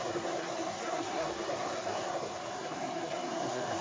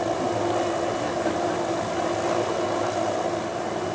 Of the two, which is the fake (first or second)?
first